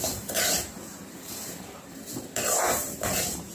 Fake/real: fake